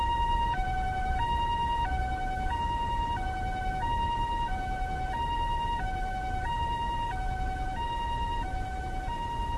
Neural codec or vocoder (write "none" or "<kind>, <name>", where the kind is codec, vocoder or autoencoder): none